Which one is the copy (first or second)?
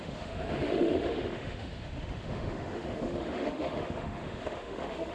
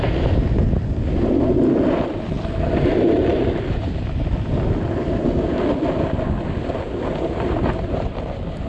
first